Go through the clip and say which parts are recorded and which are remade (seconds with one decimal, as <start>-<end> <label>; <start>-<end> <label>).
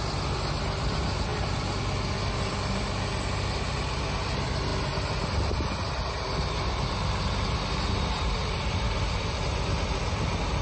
0.0-10.6 recorded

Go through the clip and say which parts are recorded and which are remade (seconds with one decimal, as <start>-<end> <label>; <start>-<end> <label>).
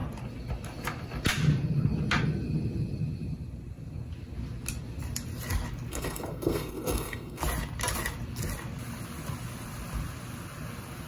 0.0-5.9 recorded; 5.9-7.4 remade; 7.4-11.1 recorded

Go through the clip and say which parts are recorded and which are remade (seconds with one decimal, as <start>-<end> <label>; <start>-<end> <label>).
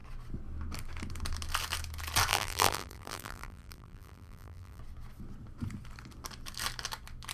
0.0-2.3 recorded; 2.3-4.8 remade; 4.8-7.3 recorded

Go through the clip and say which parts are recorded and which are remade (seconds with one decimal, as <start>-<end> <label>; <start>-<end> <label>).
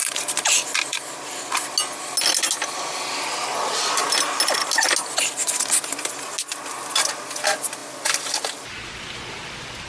0.0-1.5 remade; 1.5-9.9 recorded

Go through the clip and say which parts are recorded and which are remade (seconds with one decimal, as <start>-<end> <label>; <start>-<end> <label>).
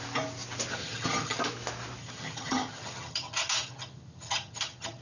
0.0-0.8 recorded; 0.8-1.4 remade; 1.4-2.0 recorded; 2.0-5.0 remade